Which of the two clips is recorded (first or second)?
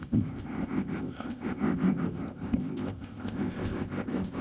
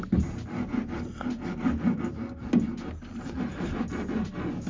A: second